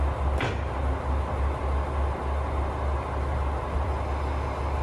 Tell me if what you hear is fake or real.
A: real